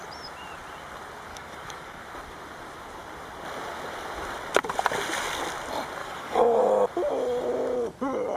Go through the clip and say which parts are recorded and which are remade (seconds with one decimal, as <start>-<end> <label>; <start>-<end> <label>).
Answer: 0.0-1.3 recorded; 1.3-2.0 remade; 2.0-6.0 recorded; 6.0-6.7 remade; 6.7-8.4 recorded